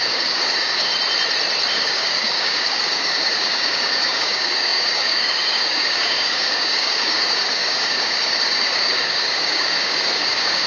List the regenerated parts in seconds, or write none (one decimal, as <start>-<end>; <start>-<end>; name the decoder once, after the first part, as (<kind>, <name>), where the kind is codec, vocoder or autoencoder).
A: 0.0-0.9 (codec, DAC); 1.7-10.7